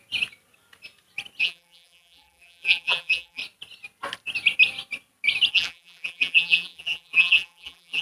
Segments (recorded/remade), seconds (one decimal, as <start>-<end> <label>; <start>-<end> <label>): 0.0-1.4 recorded; 1.4-3.4 remade; 3.4-5.5 recorded; 5.5-8.0 remade